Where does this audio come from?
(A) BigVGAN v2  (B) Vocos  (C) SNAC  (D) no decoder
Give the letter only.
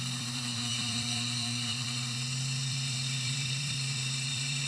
A